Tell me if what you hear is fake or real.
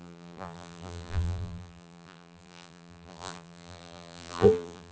fake